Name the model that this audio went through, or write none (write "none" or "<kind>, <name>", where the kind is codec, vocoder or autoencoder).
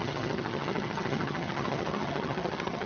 vocoder, HiFi-GAN